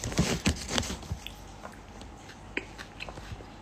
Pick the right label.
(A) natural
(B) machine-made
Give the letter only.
A